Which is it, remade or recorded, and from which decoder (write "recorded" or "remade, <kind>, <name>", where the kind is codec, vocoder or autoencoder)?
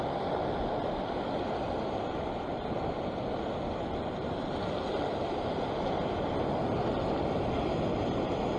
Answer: recorded